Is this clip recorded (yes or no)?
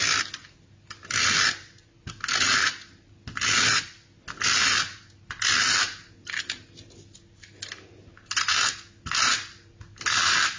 yes